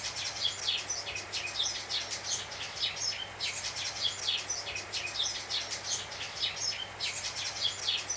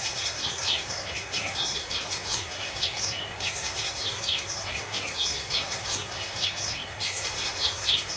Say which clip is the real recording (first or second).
first